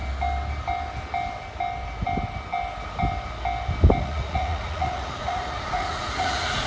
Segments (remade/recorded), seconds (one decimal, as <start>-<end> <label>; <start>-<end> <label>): 0.0-4.0 recorded; 4.0-6.7 remade